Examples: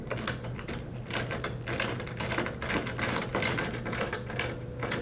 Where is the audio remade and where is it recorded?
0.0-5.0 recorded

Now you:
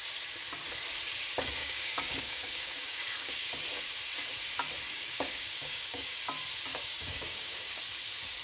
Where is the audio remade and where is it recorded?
0.0-1.6 recorded; 1.6-3.5 remade; 3.5-4.9 recorded; 4.9-6.2 remade; 6.2-6.7 recorded; 6.7-7.8 remade; 7.8-8.4 recorded

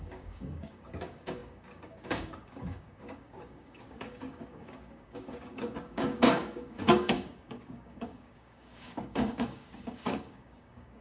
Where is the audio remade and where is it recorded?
0.0-11.0 remade

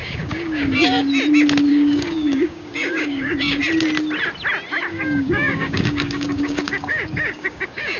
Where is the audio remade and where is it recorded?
0.0-1.1 remade; 1.1-1.7 recorded; 1.7-3.6 remade; 3.6-4.9 recorded; 4.9-8.0 remade

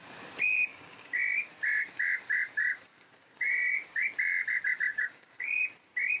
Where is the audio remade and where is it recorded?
0.0-0.7 recorded; 0.7-1.5 remade; 1.5-2.9 recorded; 2.9-4.0 remade; 4.0-4.9 recorded; 4.9-5.6 remade; 5.6-6.2 recorded

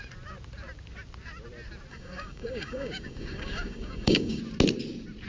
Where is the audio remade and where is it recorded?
0.0-1.9 recorded; 1.9-4.4 remade; 4.4-5.3 recorded

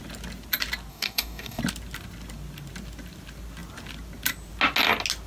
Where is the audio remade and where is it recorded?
0.0-0.9 recorded; 0.9-1.6 remade; 1.6-5.3 recorded